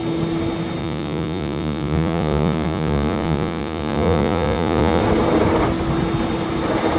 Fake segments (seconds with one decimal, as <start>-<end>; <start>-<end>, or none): 0.8-5.0